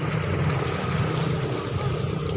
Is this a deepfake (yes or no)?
no